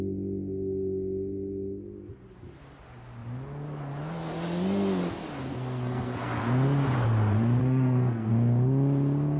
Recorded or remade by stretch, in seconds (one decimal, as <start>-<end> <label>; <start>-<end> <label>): 0.0-5.5 recorded; 5.5-6.4 remade; 6.4-7.6 recorded; 7.6-8.3 remade; 8.3-9.4 recorded

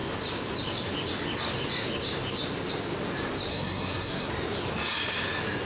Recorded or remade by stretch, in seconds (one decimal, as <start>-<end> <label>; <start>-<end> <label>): 0.0-3.5 recorded; 3.5-4.3 remade; 4.3-5.6 recorded